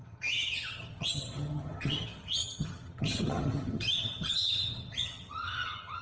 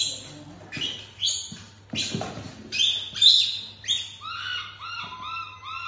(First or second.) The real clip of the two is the second